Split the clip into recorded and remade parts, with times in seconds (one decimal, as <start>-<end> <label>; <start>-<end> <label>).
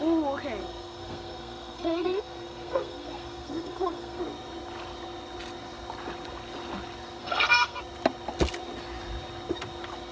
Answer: 0.0-0.6 recorded; 0.6-4.2 remade; 4.2-7.2 recorded; 7.2-7.8 remade; 7.8-10.1 recorded